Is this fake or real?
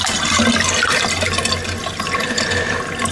real